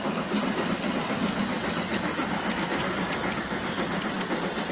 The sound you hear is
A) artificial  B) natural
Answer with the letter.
B